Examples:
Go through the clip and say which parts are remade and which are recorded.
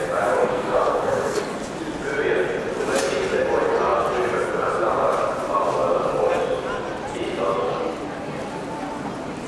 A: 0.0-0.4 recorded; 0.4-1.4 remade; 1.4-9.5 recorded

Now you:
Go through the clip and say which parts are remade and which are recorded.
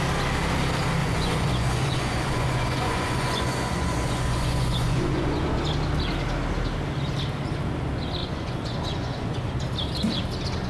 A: 0.0-1.0 recorded; 1.0-5.6 remade; 5.6-8.2 recorded; 8.2-9.5 remade; 9.5-10.7 recorded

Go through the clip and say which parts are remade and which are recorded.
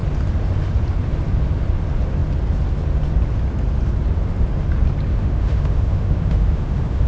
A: 0.0-5.1 recorded; 5.1-7.1 remade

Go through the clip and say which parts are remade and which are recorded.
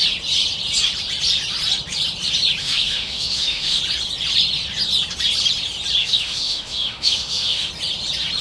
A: 0.0-2.6 recorded; 2.6-3.8 remade; 3.8-6.0 recorded; 6.0-7.7 remade; 7.7-8.4 recorded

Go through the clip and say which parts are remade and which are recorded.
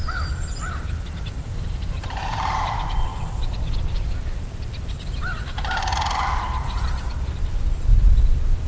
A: 0.0-8.7 recorded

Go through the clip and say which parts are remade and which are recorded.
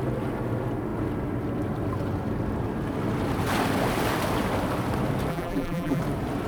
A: 0.0-5.3 recorded; 5.3-6.0 remade; 6.0-6.5 recorded